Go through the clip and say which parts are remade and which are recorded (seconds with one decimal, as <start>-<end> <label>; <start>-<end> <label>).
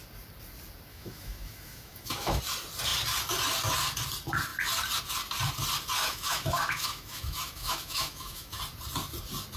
0.0-0.9 recorded; 0.9-2.4 remade; 2.4-6.0 recorded; 6.0-8.6 remade; 8.6-9.6 recorded